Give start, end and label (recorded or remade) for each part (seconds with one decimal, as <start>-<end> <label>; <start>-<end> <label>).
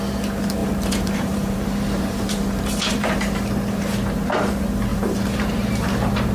0.0-0.6 recorded; 0.6-3.1 remade; 3.1-4.9 recorded; 4.9-6.3 remade